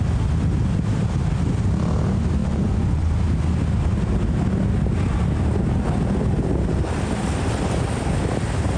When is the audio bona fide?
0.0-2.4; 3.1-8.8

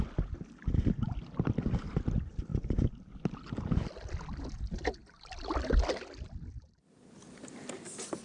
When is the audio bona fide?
0.0-8.2

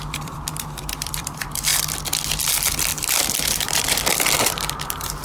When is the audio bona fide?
1.7-2.5; 2.9-3.6

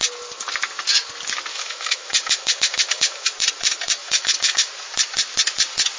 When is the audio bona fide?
0.0-1.5; 3.3-4.0; 4.7-6.0

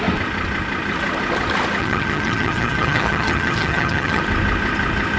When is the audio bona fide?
0.0-1.8; 4.2-5.2